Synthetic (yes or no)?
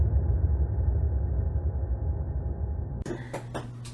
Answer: no